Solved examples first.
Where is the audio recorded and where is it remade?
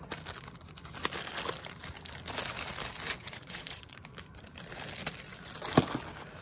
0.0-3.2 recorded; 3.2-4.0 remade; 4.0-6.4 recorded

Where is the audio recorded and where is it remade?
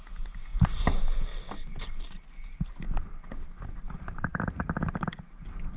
0.0-5.8 recorded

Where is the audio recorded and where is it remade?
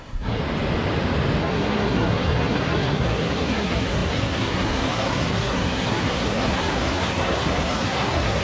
0.0-0.4 remade; 0.4-1.4 recorded; 1.4-8.4 remade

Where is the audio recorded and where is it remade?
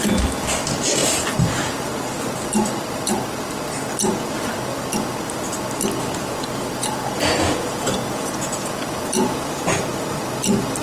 0.0-6.8 recorded; 6.8-9.8 remade; 9.8-10.8 recorded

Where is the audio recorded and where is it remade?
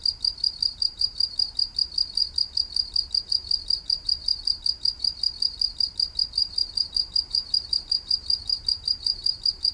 0.0-0.7 recorded; 0.7-1.4 remade; 1.4-6.4 recorded; 6.4-9.7 remade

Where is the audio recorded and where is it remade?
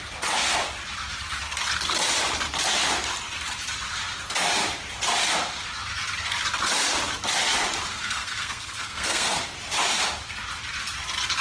0.0-7.9 recorded; 7.9-9.4 remade; 9.4-11.4 recorded